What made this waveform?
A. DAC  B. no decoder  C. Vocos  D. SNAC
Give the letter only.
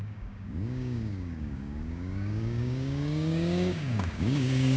A